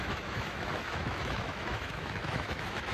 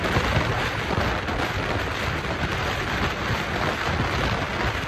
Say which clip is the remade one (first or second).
first